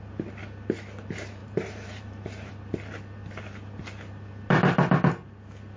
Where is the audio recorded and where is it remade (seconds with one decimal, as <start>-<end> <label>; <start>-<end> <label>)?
0.0-1.4 recorded; 1.4-2.5 remade; 2.5-5.8 recorded